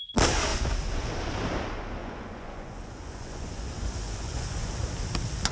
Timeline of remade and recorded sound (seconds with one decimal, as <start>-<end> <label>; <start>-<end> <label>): 0.0-0.5 recorded; 0.5-1.1 remade; 1.1-2.0 recorded; 2.0-4.7 remade; 4.7-5.5 recorded